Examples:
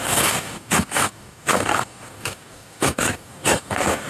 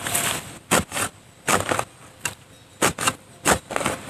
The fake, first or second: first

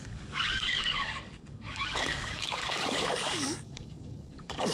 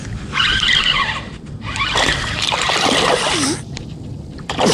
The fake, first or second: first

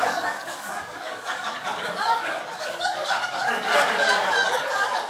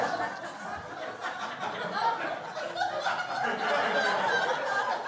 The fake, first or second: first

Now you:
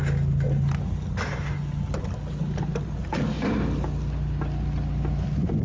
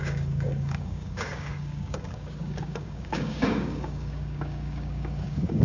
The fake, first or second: second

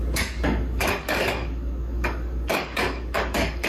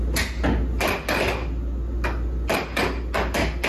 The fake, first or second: first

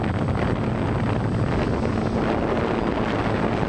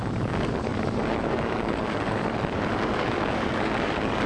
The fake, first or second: second